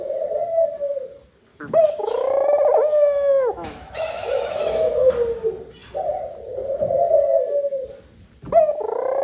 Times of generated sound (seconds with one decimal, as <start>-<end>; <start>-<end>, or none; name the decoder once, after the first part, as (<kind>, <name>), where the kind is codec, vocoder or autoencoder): 1.5-5.1 (autoencoder, DAC-VAE)